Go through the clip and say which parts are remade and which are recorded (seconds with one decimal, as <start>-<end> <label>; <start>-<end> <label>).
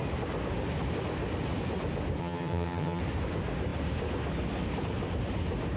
0.0-2.2 recorded; 2.2-3.0 remade; 3.0-5.8 recorded